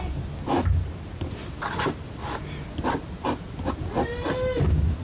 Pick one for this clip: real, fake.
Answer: real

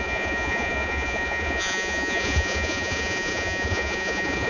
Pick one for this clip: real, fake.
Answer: fake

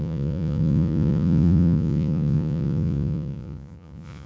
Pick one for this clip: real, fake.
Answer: fake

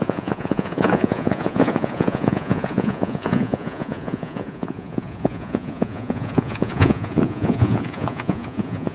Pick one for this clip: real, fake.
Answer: fake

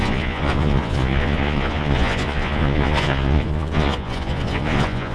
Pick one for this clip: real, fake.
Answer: fake